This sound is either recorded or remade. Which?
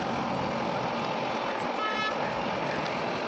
recorded